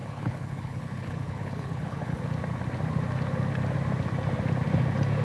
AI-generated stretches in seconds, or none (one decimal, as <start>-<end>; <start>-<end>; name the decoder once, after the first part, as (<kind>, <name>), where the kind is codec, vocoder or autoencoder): 0.0-2.2 (codec, HILCodec)